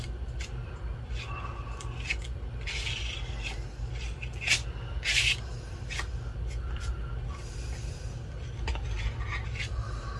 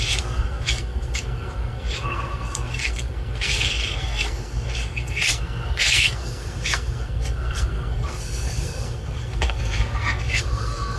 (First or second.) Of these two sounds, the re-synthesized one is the second